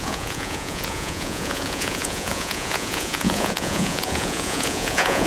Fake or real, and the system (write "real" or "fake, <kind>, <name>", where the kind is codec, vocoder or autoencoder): fake, vocoder, Vocos